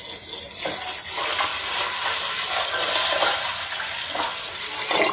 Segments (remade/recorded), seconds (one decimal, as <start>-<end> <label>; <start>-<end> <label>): 0.0-5.1 recorded